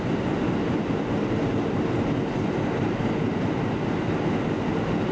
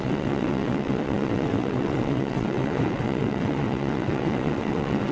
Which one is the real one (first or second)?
first